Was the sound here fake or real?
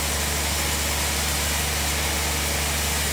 real